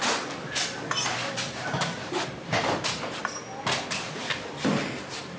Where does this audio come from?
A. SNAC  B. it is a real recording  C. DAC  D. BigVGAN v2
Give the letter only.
B